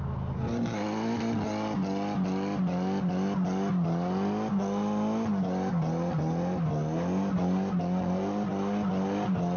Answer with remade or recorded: recorded